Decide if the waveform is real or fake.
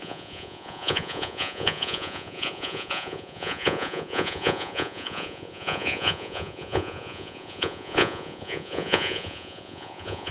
fake